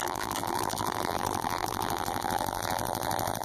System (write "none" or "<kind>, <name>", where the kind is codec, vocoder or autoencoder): vocoder, BigVGAN v2